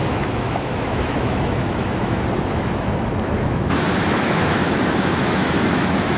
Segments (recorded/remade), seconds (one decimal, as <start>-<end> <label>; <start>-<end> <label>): 0.0-6.2 remade